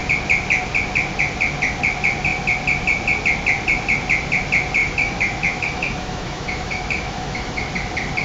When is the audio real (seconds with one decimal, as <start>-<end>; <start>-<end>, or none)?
0.0-4.8; 7.7-8.2